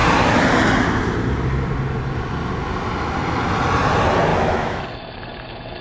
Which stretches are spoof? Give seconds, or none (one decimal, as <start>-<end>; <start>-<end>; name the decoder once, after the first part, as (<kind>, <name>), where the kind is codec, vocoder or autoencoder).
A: 4.3-4.8 (autoencoder, DAC-VAE)